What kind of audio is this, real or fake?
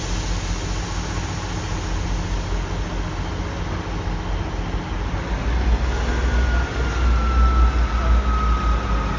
real